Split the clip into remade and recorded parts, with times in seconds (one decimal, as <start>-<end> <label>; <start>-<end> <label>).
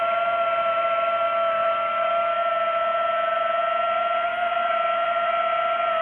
0.0-1.6 recorded; 1.6-2.1 remade; 2.1-4.3 recorded; 4.3-5.4 remade; 5.4-6.0 recorded